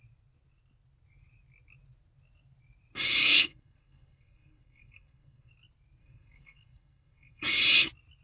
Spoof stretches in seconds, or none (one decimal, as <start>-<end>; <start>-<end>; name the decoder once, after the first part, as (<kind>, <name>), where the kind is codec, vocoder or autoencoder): 3.2-5.5 (codec, SNAC); 6.0-7.5

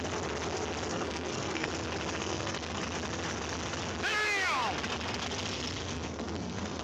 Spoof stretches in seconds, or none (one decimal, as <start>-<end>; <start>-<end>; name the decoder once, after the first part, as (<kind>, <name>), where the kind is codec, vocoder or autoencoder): 0.9-1.7 (codec, SNAC); 2.2-2.8; 5.8-6.8

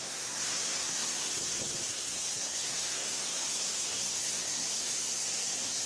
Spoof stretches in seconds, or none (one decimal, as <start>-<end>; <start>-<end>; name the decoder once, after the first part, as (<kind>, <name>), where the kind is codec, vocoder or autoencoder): 0.0-5.9 (codec, SNAC)

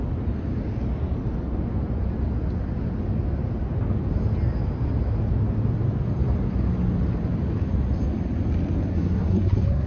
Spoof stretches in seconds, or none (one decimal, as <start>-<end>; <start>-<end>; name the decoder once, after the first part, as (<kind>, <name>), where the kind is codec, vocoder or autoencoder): 8.9-9.9 (codec, SNAC)

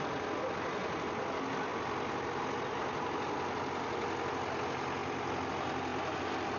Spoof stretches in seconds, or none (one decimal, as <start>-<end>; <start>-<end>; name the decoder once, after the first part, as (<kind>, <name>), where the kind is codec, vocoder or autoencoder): none